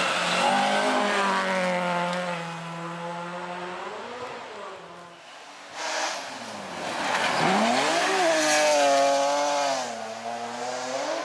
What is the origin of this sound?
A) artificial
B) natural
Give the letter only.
B